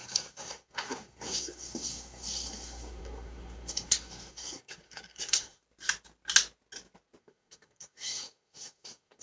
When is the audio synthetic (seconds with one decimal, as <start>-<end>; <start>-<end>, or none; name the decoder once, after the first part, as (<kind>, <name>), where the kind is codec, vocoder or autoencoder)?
0.0-5.6 (codec, SNAC); 7.2-9.2